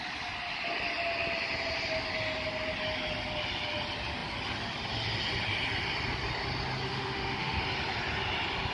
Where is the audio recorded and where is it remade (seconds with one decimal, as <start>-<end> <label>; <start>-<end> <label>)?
0.0-6.9 recorded; 6.9-7.6 remade; 7.6-8.7 recorded